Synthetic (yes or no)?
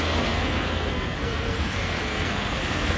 yes